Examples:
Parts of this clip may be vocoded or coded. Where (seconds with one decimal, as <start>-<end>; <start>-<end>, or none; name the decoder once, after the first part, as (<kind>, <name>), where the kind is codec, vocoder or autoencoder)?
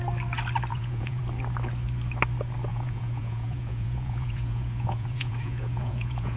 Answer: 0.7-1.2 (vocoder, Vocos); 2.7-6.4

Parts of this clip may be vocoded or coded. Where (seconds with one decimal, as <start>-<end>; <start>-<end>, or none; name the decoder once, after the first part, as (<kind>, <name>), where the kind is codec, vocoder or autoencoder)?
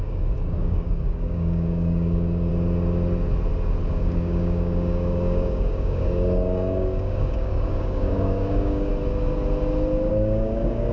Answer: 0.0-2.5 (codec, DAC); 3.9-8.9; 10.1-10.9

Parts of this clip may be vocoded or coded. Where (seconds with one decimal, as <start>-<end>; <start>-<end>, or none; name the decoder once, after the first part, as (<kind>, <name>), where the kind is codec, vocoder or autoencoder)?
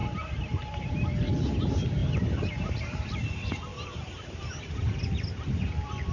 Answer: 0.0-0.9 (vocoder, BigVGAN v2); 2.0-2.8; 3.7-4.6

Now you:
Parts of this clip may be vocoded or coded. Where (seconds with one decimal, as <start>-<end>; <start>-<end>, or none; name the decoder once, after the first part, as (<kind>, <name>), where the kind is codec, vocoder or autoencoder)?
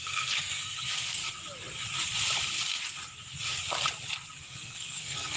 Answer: 0.0-1.2 (codec, SNAC); 4.4-5.4